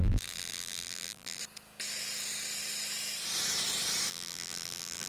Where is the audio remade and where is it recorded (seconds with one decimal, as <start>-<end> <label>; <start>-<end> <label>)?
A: 0.0-1.4 remade; 1.4-4.1 recorded; 4.1-5.1 remade